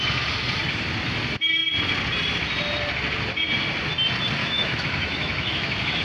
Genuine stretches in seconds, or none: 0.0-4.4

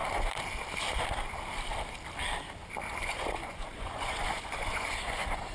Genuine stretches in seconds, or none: 0.0-3.0

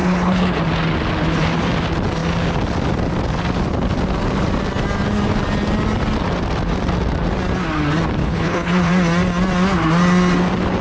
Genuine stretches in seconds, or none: 0.6-8.2; 8.9-10.8

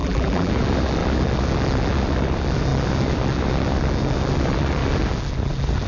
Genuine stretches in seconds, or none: 0.5-5.9